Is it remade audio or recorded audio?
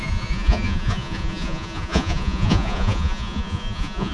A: remade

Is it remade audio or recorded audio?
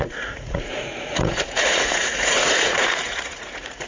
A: remade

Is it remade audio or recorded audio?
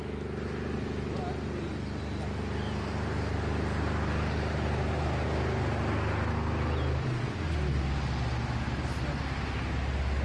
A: recorded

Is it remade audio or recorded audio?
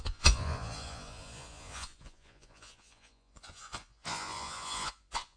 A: remade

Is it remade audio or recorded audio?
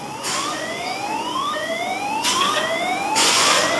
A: remade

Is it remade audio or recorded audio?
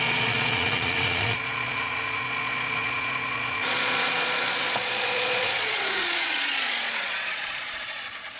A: remade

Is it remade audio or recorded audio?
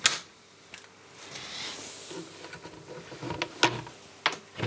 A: recorded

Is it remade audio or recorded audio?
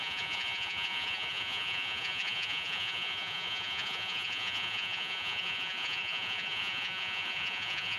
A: remade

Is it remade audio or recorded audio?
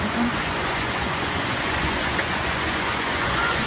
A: remade